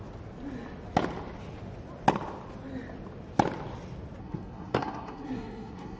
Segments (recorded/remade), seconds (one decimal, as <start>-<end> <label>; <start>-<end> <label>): 0.0-4.2 recorded; 4.2-6.0 remade